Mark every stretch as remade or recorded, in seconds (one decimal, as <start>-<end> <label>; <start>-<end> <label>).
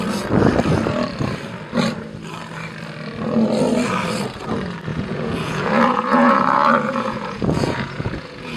0.0-4.9 recorded; 4.9-8.6 remade